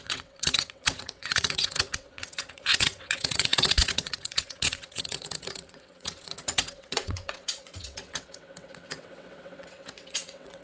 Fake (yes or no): yes